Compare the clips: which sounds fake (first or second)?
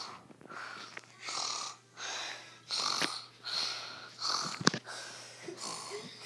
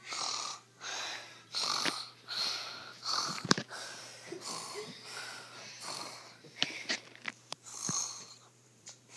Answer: second